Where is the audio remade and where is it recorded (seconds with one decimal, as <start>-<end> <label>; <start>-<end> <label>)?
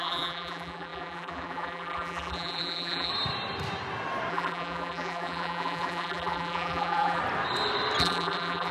0.0-3.1 remade; 3.1-4.3 recorded; 4.3-7.2 remade; 7.2-8.0 recorded; 8.0-8.7 remade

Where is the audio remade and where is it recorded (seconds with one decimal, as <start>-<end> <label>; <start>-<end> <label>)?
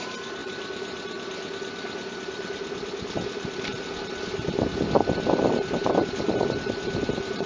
0.0-0.4 recorded; 0.4-4.9 remade; 4.9-7.5 recorded